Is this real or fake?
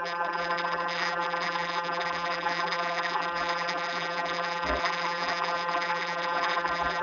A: fake